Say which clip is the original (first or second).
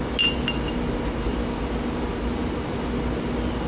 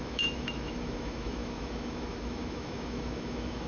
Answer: first